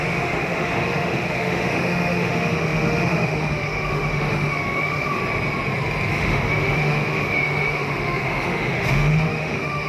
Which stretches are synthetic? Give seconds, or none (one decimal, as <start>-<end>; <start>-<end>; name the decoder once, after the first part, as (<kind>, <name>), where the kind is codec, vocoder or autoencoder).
0.0-5.2 (autoencoder, DAC-VAE); 6.1-9.9